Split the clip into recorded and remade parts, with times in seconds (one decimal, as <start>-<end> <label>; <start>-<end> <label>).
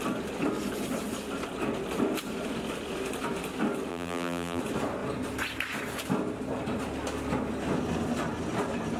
0.0-3.9 recorded; 3.9-4.6 remade; 4.6-9.0 recorded